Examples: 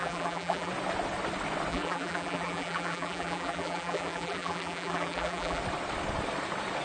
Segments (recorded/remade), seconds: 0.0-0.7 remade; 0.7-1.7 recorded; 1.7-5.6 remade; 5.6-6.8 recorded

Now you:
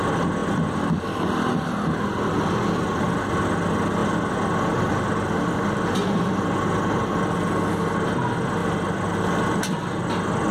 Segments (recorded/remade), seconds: 0.0-8.6 recorded; 8.6-9.3 remade; 9.3-10.5 recorded

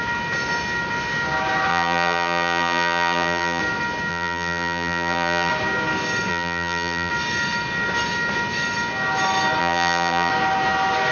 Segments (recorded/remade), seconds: 0.0-1.7 recorded; 1.7-3.6 remade; 3.6-4.1 recorded; 4.1-5.5 remade; 5.5-6.3 recorded; 6.3-7.1 remade; 7.1-9.6 recorded; 9.6-10.3 remade; 10.3-11.1 recorded

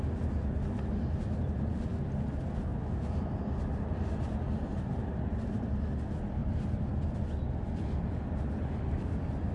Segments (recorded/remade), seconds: 0.0-4.7 recorded; 4.7-5.7 remade; 5.7-6.4 recorded; 6.4-7.1 remade; 7.1-9.5 recorded

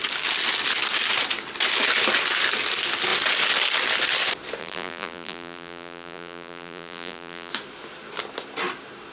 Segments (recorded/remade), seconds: 0.0-4.6 recorded; 4.6-7.5 remade; 7.5-9.1 recorded

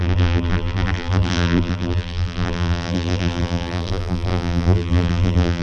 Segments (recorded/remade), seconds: 0.0-5.6 remade

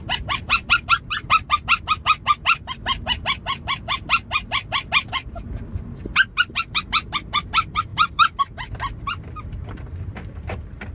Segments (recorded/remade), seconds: 0.0-0.7 remade; 0.7-7.9 recorded; 7.9-8.4 remade; 8.4-10.9 recorded

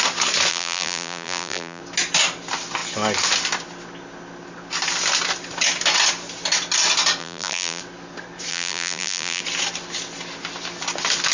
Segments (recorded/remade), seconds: 0.0-0.5 recorded; 0.5-1.8 remade; 1.8-7.2 recorded; 7.2-7.8 remade; 7.8-8.5 recorded; 8.5-9.4 remade; 9.4-11.3 recorded